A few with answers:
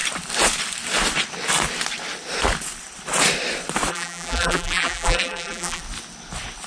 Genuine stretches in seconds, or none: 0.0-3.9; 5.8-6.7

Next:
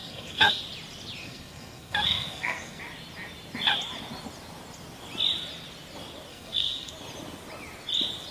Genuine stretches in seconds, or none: 0.6-1.2; 2.8-6.3; 6.9-8.3

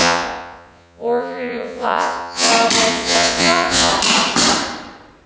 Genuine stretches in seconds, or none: 2.5-2.9; 3.9-5.3

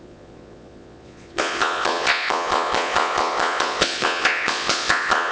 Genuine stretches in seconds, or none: none

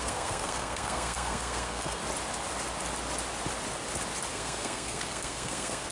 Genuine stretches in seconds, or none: 2.0-4.3

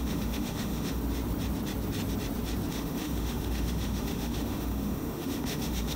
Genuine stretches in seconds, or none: 1.0-2.7